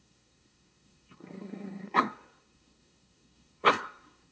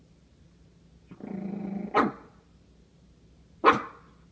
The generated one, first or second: first